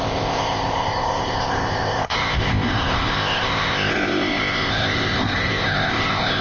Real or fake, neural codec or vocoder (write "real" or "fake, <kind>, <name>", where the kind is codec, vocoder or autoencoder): fake, codec, ZipCodec